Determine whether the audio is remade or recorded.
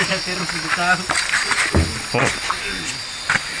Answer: recorded